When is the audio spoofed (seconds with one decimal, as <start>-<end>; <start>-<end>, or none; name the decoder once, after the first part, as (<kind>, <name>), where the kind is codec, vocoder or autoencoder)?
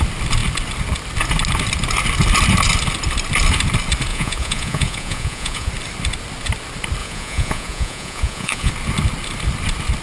4.1-5.7 (vocoder, Vocos); 7.0-8.7